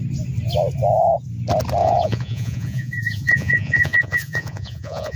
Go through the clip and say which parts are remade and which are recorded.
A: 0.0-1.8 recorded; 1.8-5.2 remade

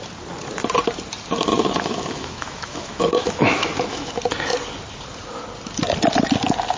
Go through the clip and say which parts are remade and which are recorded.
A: 0.0-1.5 recorded; 1.5-4.1 remade; 4.1-6.8 recorded

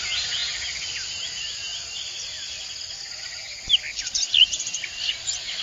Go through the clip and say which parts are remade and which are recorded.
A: 0.0-5.6 recorded